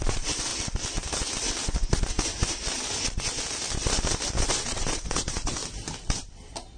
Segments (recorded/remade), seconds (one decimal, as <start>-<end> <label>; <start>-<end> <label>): 0.0-0.5 remade; 0.5-4.4 recorded; 4.4-5.6 remade; 5.6-6.8 recorded